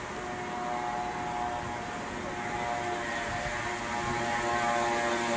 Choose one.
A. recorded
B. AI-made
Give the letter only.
A